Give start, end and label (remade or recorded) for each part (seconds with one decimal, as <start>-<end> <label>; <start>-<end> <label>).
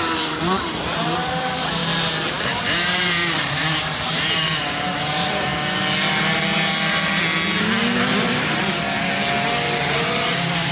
0.0-1.8 remade; 1.8-2.4 recorded; 2.4-5.5 remade; 5.5-9.9 recorded; 9.9-10.7 remade